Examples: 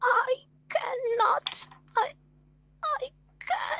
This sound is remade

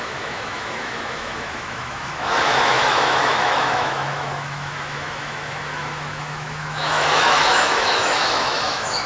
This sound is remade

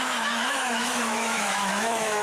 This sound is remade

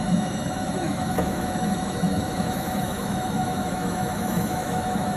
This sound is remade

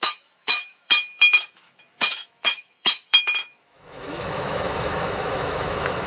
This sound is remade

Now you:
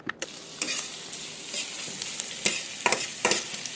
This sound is recorded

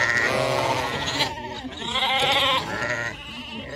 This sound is recorded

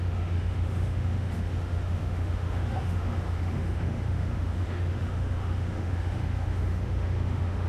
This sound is remade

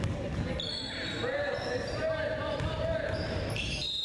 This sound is recorded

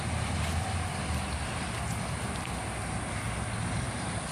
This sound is recorded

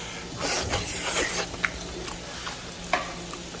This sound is recorded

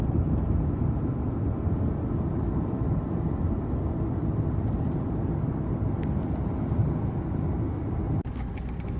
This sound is recorded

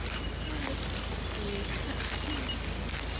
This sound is recorded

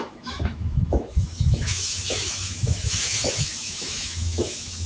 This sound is remade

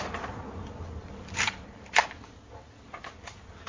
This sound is recorded